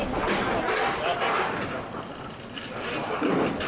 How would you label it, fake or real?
real